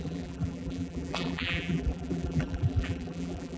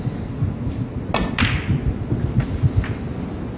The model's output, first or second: first